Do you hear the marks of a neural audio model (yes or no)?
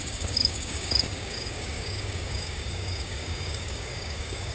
yes